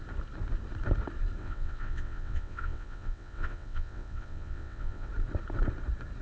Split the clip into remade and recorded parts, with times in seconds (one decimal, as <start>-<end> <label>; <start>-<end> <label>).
0.0-1.4 recorded; 1.4-5.1 remade; 5.1-6.2 recorded